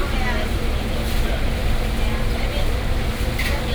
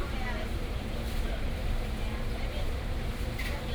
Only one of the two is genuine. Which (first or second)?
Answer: first